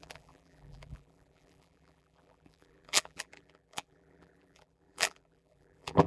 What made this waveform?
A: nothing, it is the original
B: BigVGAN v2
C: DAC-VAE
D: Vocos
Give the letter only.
B